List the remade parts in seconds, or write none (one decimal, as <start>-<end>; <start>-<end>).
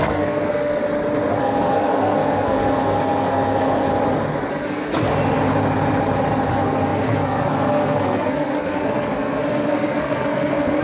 0.0-0.8; 1.4-3.9; 4.5-4.9; 6.5-10.8